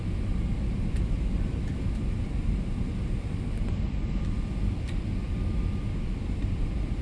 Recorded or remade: recorded